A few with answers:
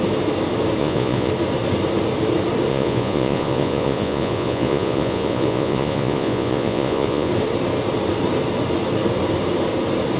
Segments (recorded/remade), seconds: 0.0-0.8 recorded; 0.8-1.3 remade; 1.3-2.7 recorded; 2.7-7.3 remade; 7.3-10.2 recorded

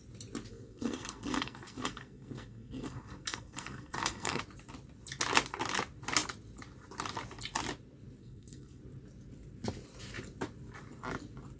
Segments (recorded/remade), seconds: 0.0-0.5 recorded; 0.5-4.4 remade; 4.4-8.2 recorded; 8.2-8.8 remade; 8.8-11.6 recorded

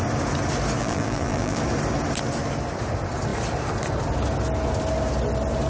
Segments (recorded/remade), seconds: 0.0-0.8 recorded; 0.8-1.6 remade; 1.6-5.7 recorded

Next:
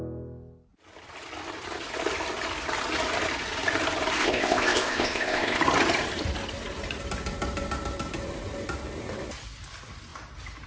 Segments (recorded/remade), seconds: 0.0-4.2 recorded; 4.2-5.6 remade; 5.6-10.7 recorded